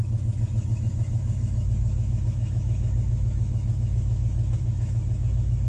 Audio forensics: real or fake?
fake